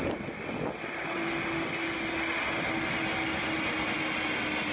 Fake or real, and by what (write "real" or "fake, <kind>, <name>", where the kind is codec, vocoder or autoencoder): real